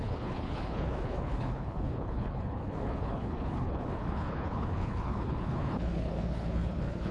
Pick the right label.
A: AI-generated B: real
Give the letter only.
A